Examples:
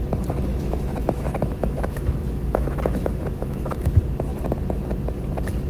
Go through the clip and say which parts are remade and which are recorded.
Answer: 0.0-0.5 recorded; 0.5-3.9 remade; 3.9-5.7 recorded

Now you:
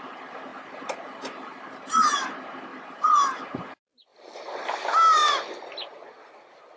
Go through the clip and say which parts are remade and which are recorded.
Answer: 0.0-6.8 recorded

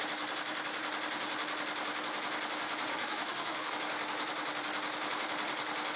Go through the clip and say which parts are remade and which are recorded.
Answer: 0.0-2.9 recorded; 2.9-3.7 remade; 3.7-6.0 recorded

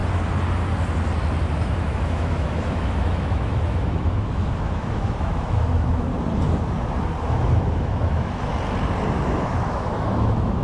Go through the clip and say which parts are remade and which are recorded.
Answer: 0.0-1.8 recorded; 1.8-6.1 remade; 6.1-7.3 recorded; 7.3-8.5 remade; 8.5-9.2 recorded; 9.2-10.6 remade

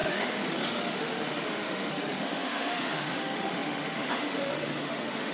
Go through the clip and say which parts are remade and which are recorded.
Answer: 0.0-5.3 remade

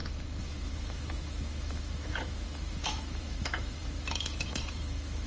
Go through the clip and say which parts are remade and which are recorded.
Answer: 0.0-5.3 remade

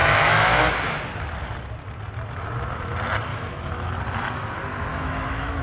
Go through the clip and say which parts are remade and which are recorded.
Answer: 0.0-0.6 remade; 0.6-3.3 recorded; 3.3-3.9 remade; 3.9-4.9 recorded; 4.9-5.6 remade